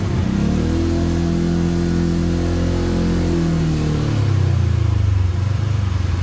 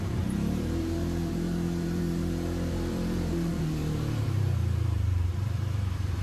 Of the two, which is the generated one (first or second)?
second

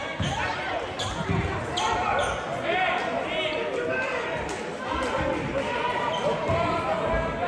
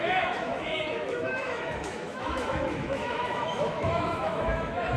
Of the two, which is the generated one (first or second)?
second